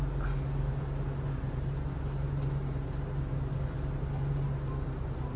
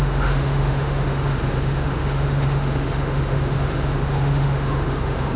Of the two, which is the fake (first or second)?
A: second